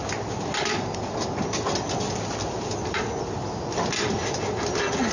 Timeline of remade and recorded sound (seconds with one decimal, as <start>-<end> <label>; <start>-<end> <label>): 0.0-5.1 recorded